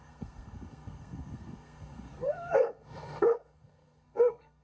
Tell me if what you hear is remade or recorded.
remade